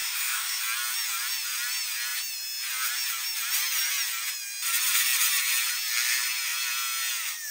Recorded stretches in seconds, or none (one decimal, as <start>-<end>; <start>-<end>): 0.6-7.5